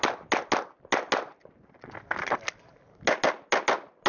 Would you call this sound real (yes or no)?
yes